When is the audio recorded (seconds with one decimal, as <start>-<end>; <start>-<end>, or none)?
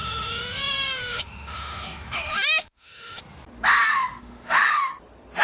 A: 3.2-3.9; 4.9-5.4